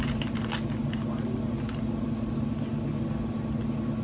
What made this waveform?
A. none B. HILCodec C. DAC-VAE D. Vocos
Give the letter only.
A